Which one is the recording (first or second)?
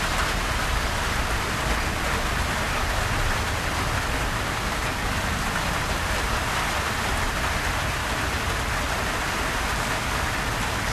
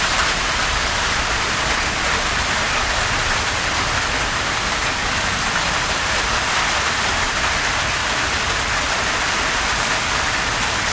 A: first